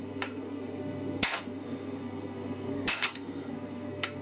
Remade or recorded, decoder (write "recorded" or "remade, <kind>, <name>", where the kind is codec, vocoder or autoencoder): remade, codec, SNAC